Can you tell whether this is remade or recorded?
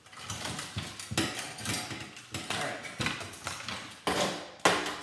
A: recorded